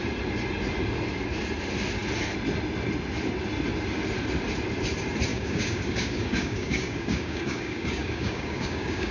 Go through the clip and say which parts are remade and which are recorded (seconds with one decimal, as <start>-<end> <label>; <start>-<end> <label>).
0.0-5.3 recorded; 5.3-9.1 remade

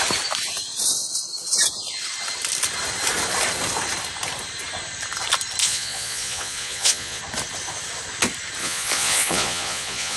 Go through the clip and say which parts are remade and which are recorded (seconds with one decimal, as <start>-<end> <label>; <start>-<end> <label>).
0.0-5.6 recorded; 5.6-7.2 remade; 7.2-8.6 recorded; 8.6-10.2 remade

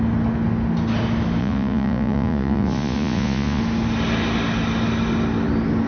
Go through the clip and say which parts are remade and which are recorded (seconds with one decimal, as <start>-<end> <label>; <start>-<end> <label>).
0.0-1.4 recorded; 1.4-3.6 remade; 3.6-5.9 recorded